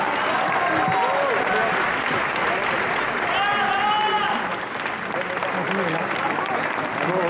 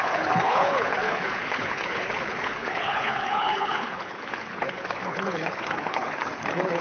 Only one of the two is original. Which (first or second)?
first